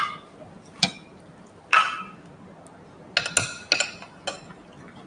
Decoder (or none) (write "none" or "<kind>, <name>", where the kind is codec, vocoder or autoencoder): none